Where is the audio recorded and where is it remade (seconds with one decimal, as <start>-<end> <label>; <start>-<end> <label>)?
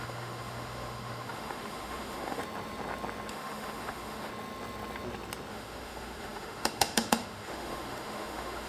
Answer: 0.0-2.4 remade; 2.4-3.3 recorded; 3.3-4.3 remade; 4.3-5.5 recorded; 5.5-8.7 remade